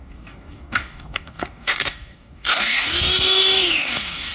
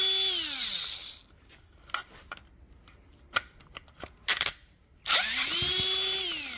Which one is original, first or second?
second